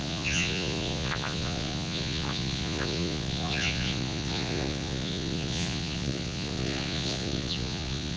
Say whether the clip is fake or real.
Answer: fake